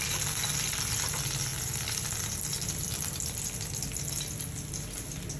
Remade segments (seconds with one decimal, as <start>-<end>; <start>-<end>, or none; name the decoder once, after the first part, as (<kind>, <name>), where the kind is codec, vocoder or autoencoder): none